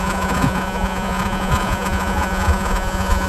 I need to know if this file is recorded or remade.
remade